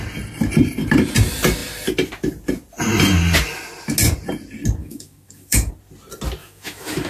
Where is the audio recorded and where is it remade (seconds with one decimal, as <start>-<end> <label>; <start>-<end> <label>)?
0.0-4.8 recorded; 4.8-5.7 remade; 5.7-6.4 recorded; 6.4-7.1 remade